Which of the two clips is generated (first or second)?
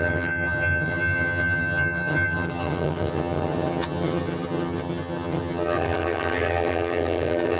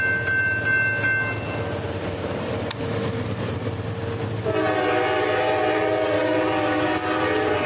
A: first